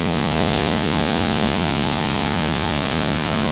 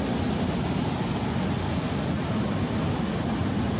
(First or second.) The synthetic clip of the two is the first